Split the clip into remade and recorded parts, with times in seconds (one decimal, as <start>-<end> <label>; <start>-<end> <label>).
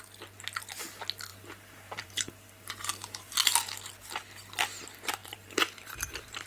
0.0-1.3 recorded; 1.3-3.4 remade; 3.4-5.2 recorded; 5.2-6.5 remade